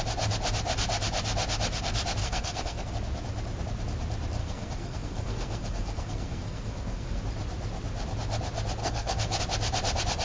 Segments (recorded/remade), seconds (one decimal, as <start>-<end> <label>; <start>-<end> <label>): 0.0-2.2 recorded; 2.2-2.9 remade; 2.9-4.4 recorded; 4.4-7.2 remade; 7.2-8.8 recorded; 8.8-9.4 remade; 9.4-10.2 recorded